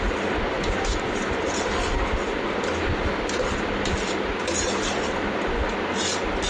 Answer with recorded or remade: recorded